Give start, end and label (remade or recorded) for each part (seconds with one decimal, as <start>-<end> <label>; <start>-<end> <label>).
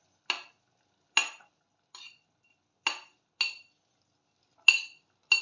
0.0-5.4 recorded